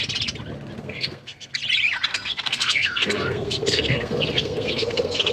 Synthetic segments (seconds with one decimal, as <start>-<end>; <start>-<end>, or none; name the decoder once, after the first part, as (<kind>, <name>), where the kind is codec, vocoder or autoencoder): 0.8-1.5 (codec, SNAC); 2.1-5.3